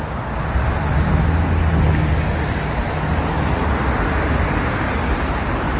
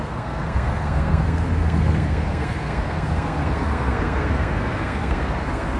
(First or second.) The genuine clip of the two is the first